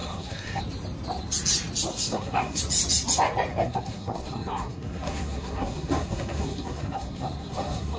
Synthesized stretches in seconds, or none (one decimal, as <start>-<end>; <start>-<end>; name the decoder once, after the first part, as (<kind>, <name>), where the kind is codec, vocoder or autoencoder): 0.0-0.6 (codec, SNAC); 1.9-2.6; 3.5-8.0